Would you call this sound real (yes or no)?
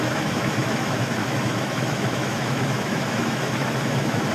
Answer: no